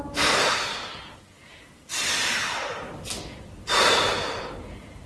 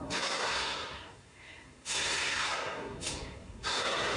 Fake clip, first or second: second